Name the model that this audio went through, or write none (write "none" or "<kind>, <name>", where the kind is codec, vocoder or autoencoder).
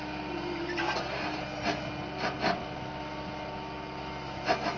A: none